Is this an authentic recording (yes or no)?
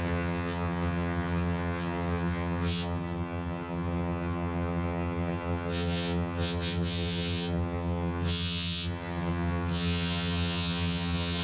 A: no